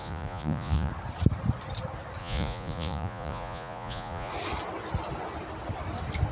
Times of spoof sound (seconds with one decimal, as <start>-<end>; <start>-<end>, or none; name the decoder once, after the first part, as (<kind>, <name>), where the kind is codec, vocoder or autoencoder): 0.0-0.9 (vocoder, Vocos); 2.2-4.3